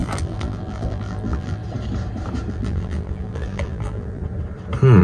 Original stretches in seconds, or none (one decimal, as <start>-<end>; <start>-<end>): 1.6-2.5; 4.2-5.0

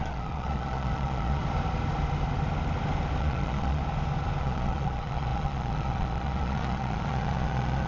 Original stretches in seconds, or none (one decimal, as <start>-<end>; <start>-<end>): 1.4-3.2; 3.8-4.4

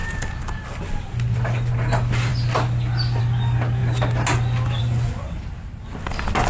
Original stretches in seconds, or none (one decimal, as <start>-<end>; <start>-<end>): 0.0-6.5

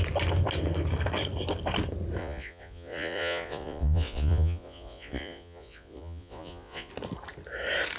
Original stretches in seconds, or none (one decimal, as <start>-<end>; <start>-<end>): 0.0-2.2; 6.9-8.0

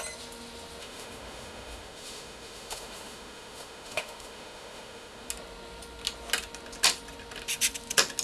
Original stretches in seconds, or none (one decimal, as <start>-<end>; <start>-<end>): 0.0-0.8; 5.3-8.2

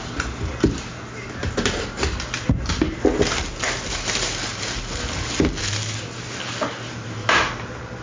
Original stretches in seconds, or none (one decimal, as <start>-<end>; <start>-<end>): 0.0-8.0

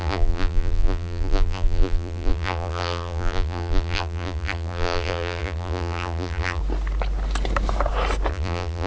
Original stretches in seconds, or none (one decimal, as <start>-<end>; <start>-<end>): 6.6-8.3